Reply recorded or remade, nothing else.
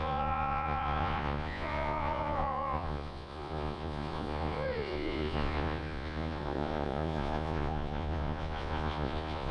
remade